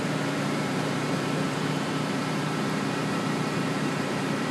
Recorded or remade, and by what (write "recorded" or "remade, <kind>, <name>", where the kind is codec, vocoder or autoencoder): remade, vocoder, BigVGAN v2